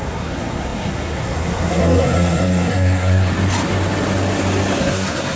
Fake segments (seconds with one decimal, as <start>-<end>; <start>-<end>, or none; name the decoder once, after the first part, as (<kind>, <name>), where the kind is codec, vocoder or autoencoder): 0.0-3.3 (codec, SNAC); 4.8-5.4